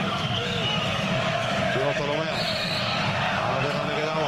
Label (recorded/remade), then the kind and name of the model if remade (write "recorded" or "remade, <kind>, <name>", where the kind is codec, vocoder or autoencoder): remade, codec, DAC